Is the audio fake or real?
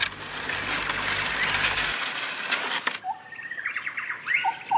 real